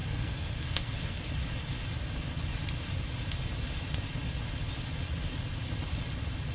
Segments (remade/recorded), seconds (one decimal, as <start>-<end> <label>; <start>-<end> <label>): 0.0-1.3 remade; 1.3-6.5 recorded